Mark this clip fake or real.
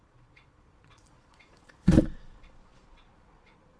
fake